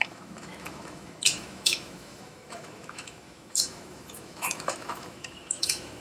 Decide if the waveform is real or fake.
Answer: fake